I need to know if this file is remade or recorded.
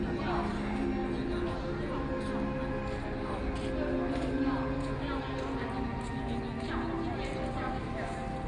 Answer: recorded